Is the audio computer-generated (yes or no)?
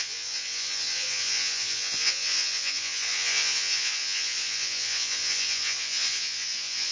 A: yes